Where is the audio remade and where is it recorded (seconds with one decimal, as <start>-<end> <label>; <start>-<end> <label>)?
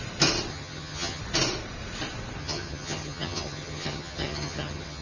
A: 0.0-0.5 recorded; 0.5-1.2 remade; 1.2-2.4 recorded; 2.4-5.0 remade